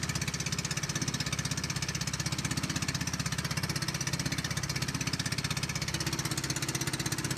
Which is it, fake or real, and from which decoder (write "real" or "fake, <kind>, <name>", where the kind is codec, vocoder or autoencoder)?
real